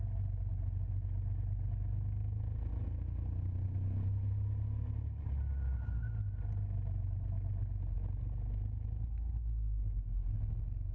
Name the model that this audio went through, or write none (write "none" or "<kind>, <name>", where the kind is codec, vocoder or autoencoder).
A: none